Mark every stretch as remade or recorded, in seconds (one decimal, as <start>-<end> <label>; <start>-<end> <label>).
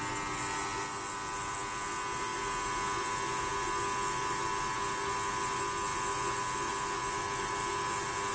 0.0-8.3 recorded